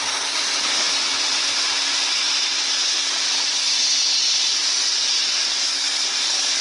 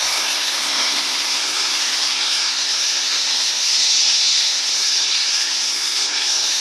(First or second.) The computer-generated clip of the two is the second